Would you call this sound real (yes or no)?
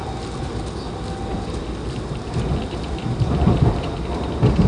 yes